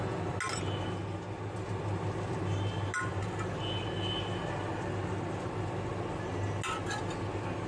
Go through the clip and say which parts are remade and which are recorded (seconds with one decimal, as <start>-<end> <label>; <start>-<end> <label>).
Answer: 0.0-7.7 recorded